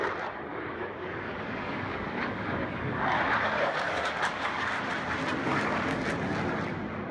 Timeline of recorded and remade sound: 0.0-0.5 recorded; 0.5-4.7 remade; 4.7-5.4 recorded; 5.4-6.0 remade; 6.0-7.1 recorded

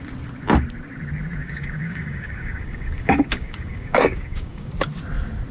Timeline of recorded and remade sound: 0.0-1.4 recorded; 1.4-4.7 remade; 4.7-5.5 recorded

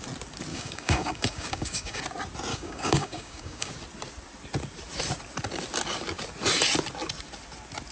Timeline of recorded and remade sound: 0.0-0.5 recorded; 0.5-2.0 remade; 2.0-2.5 recorded; 2.5-3.7 remade; 3.7-7.9 recorded

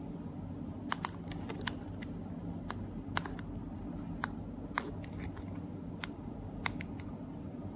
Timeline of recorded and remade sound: 0.0-7.8 recorded

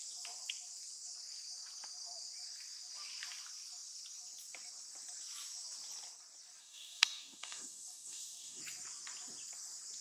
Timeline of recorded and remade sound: 0.0-6.6 recorded; 6.6-8.6 remade; 8.6-10.0 recorded